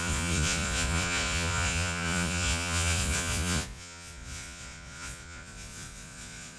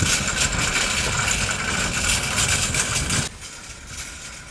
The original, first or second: second